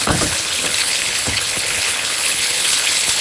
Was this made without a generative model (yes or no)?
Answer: no